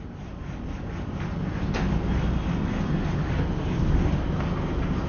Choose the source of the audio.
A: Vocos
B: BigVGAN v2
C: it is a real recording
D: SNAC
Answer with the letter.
C